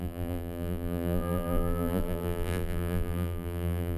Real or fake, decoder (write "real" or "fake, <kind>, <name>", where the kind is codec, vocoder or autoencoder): fake, vocoder, BigVGAN v2